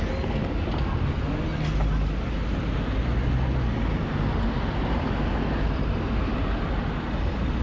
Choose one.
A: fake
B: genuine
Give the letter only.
B